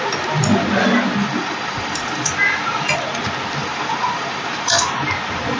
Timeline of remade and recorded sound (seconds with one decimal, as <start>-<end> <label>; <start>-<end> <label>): 0.0-1.2 recorded; 1.2-2.3 remade; 2.3-3.6 recorded; 3.6-5.0 remade; 5.0-5.6 recorded